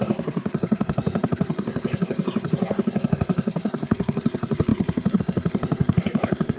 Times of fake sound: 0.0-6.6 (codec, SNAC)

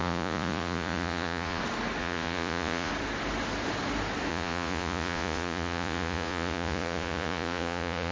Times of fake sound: 0.0-1.6 (vocoder, Vocos); 2.0-2.9; 4.3-8.1

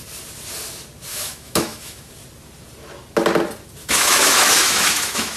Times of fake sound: 1.1-2.1 (autoencoder, DAC-VAE); 3.8-5.4